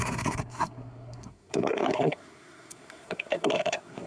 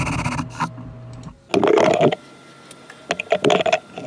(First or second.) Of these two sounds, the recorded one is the second